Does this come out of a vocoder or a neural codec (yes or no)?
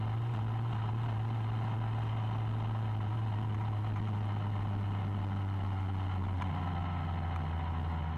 no